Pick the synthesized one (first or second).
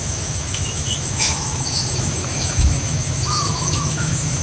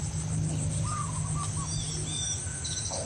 first